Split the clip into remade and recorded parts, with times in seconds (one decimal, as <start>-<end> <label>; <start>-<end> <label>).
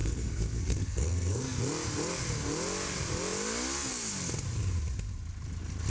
0.0-1.6 remade; 1.6-5.9 recorded